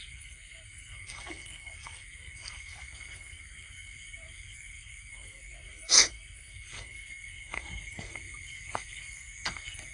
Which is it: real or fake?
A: fake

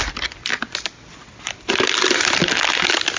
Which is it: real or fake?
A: real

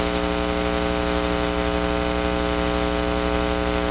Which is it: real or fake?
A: real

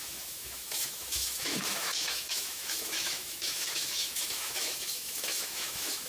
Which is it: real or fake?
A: fake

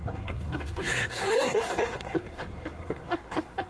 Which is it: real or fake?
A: fake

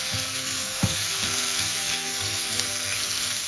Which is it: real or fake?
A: fake